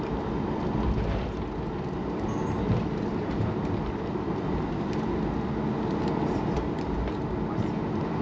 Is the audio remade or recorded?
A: recorded